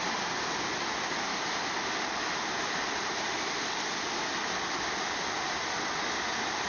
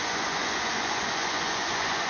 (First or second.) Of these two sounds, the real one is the first